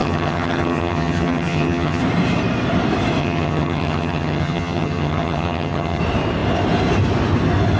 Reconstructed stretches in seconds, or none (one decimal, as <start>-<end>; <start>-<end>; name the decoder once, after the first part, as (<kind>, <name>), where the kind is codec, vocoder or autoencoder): 0.0-2.0 (vocoder, HiFi-GAN); 3.2-6.0